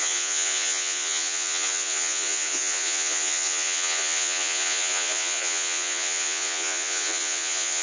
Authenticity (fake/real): fake